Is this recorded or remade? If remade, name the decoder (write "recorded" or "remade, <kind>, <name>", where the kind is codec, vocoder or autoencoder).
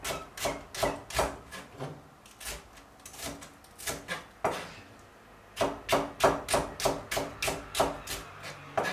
recorded